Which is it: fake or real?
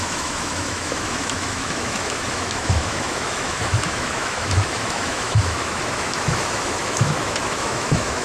fake